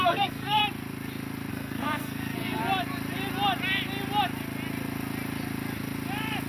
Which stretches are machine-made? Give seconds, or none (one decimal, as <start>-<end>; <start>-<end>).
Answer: 0.0-0.6; 1.5-2.6